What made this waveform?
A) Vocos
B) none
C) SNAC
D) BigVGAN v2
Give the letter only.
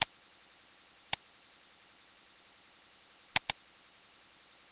B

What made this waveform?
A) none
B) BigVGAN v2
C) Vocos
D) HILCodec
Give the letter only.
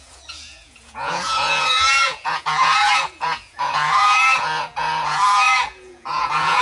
C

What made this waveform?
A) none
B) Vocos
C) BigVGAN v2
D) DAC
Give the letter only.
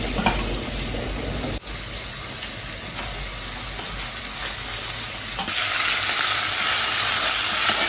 A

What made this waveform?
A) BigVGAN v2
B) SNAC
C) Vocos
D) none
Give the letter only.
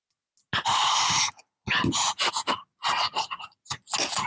D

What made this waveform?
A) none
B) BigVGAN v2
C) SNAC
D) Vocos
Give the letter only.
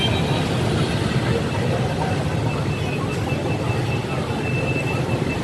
A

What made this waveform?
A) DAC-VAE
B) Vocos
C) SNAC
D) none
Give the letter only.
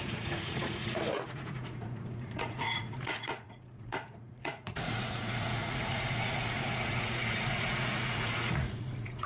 B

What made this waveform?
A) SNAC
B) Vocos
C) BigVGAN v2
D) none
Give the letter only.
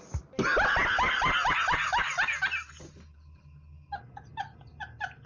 D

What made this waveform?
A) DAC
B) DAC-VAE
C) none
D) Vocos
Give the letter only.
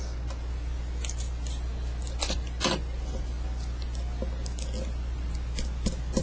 C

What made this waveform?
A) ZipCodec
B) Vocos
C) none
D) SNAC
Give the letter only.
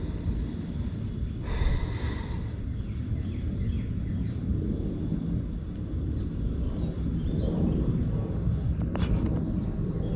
C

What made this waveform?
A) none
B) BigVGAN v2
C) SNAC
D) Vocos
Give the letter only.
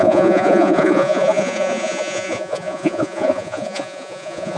D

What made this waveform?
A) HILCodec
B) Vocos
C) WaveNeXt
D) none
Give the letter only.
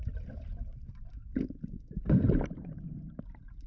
D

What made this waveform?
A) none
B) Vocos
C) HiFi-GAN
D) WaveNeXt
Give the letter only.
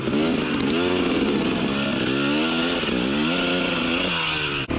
A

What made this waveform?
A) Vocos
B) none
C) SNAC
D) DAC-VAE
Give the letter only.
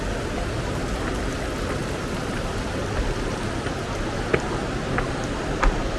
B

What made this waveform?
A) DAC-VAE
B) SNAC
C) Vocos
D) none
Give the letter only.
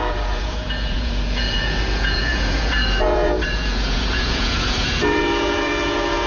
C